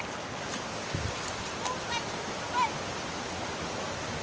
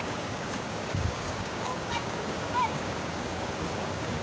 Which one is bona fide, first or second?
first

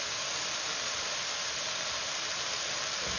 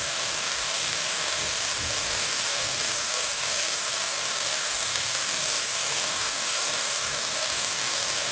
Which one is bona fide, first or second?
first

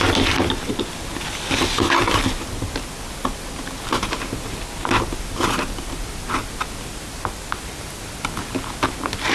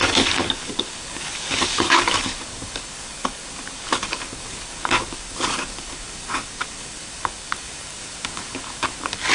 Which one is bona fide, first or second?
first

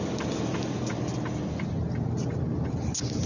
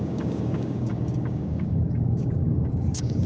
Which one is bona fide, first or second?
first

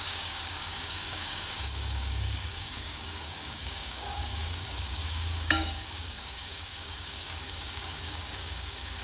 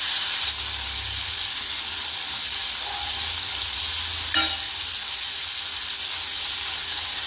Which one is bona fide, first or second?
second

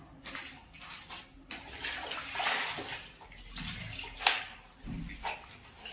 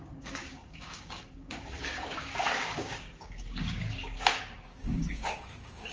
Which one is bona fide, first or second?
first